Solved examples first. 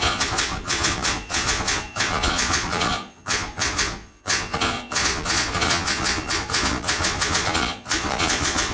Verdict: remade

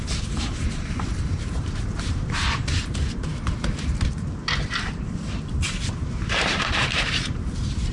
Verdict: remade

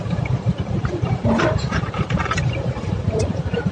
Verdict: remade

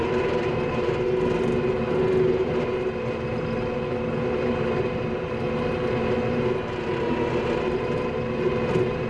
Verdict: recorded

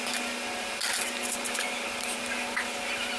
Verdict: recorded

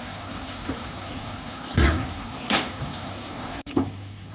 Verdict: remade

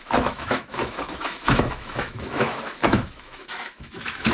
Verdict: remade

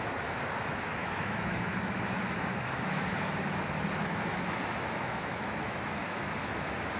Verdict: remade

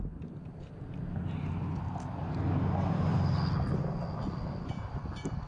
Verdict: recorded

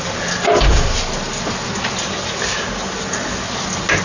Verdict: recorded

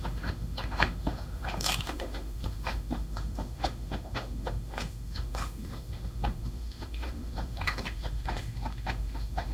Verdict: remade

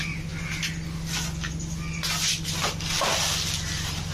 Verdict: recorded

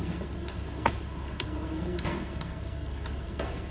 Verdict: remade